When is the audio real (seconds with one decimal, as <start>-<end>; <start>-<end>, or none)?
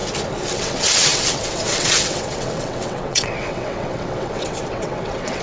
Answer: 0.0-0.5